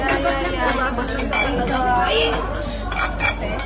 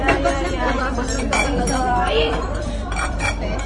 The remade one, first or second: second